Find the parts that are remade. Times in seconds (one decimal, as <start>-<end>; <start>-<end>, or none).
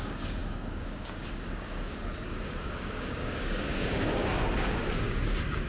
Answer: 0.0-5.7